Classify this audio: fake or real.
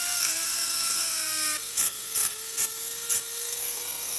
fake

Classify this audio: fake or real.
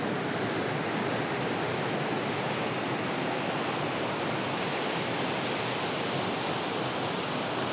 real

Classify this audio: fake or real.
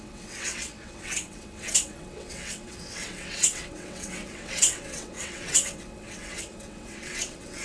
fake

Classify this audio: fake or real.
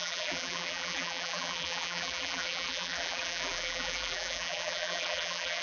fake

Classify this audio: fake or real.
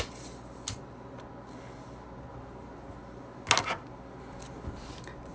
real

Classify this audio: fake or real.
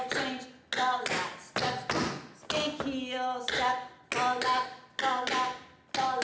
real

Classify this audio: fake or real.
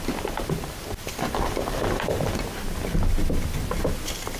real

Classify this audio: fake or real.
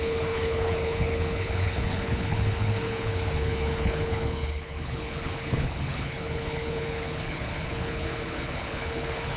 fake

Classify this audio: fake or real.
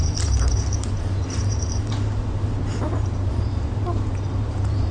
fake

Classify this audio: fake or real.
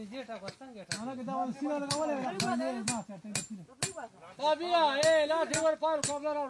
real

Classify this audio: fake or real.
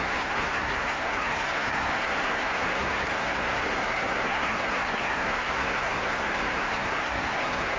fake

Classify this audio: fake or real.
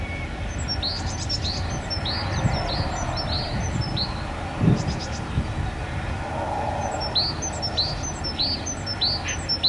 real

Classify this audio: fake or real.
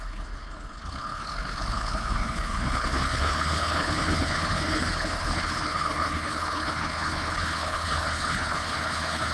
fake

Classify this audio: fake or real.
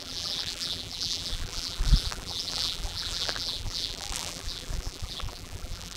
fake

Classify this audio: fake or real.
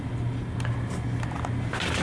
real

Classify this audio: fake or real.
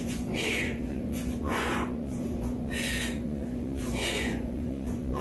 fake